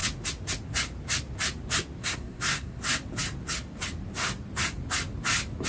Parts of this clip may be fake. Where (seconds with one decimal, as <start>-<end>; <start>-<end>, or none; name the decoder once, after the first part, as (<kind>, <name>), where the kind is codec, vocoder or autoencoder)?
2.0-2.8 (codec, SNAC)